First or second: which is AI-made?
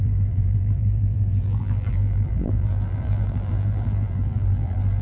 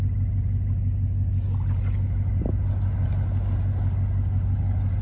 first